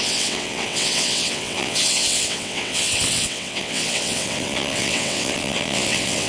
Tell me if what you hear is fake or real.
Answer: fake